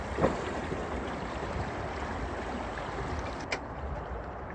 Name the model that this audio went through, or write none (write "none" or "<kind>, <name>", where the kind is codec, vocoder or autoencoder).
none